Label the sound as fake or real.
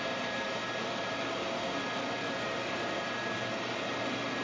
real